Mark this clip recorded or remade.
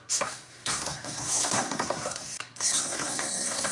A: remade